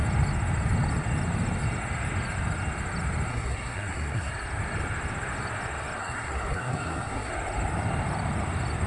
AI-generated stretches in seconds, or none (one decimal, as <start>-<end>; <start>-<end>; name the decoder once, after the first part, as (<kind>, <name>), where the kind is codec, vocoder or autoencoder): 3.3-4.3 (codec, SNAC); 6.0-7.3